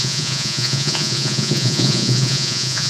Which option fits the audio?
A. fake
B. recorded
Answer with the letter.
A